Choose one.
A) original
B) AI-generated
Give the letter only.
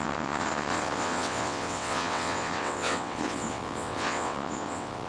B